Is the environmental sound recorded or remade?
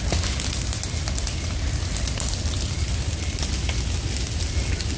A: recorded